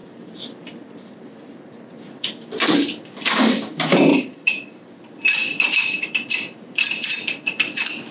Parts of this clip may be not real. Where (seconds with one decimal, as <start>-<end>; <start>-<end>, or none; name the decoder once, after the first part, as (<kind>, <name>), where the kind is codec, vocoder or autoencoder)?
0.0-2.3 (vocoder, BigVGAN v2); 4.1-5.0; 5.4-7.2